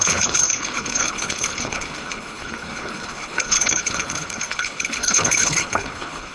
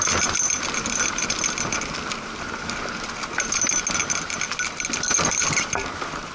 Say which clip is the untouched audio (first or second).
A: second